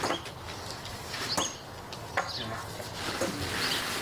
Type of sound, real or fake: real